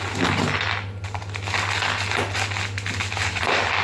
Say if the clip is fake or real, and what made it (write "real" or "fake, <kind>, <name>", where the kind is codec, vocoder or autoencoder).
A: real